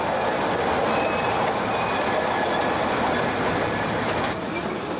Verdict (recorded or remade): recorded